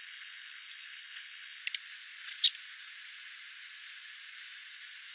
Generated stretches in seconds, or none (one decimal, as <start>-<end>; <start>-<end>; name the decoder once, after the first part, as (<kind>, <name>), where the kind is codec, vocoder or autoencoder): 0.0-1.6 (codec, HILCodec)